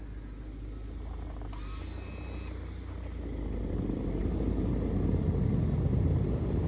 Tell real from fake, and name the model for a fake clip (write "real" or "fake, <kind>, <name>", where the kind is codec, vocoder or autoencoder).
real